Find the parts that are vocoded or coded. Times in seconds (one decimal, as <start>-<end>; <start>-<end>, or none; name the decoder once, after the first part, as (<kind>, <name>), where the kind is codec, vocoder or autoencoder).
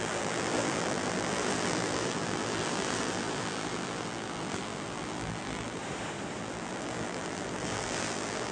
0.0-5.8 (vocoder, BigVGAN v2); 6.4-8.5